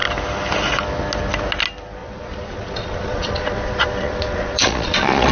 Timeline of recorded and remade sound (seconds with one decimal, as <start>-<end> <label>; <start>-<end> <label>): 0.0-2.0 recorded; 2.0-5.3 remade